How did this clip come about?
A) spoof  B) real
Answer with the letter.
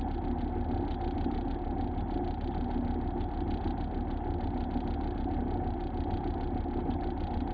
B